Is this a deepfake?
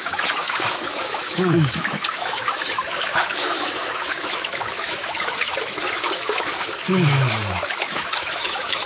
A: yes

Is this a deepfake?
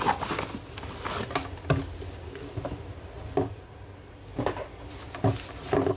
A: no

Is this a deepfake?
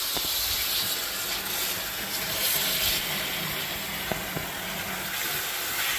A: no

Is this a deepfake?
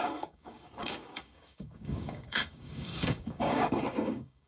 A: yes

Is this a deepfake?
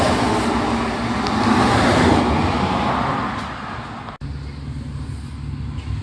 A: no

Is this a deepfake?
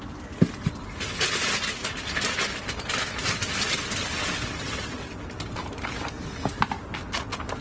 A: no